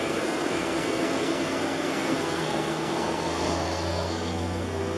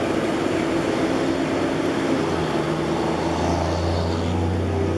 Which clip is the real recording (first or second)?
second